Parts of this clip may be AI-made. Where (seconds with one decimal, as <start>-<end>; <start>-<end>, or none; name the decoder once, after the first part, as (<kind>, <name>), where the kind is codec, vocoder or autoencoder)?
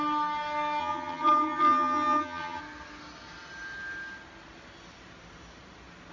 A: 0.8-2.6 (vocoder, HiFi-GAN)